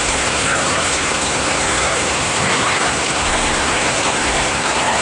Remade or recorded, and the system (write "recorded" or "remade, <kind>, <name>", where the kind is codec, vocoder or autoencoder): remade, codec, SNAC